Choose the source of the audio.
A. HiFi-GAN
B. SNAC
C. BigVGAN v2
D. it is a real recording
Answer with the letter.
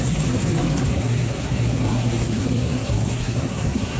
B